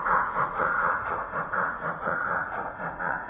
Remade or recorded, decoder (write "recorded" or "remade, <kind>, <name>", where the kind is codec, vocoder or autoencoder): remade, vocoder, Vocos